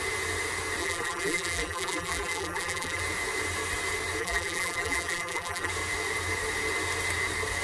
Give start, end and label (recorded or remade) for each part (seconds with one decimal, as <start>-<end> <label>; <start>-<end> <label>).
0.0-0.8 recorded; 0.8-3.0 remade; 3.0-4.2 recorded; 4.2-5.7 remade; 5.7-7.6 recorded